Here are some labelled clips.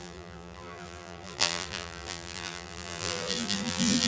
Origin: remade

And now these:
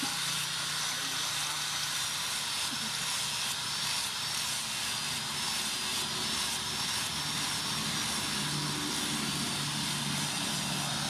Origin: recorded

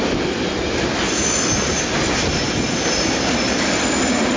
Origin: recorded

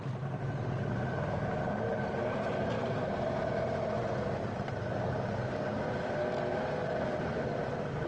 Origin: recorded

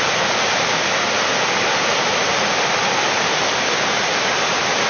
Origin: remade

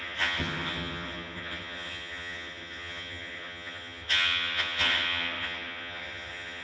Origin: remade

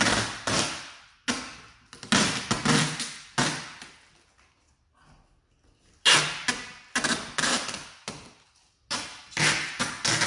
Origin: recorded